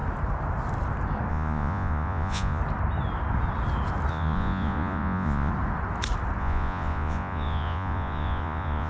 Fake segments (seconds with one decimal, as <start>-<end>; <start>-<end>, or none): 1.3-2.6; 4.1-5.5; 6.4-8.9